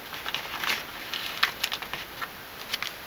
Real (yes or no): yes